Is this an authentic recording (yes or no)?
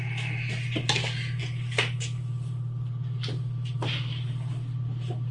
yes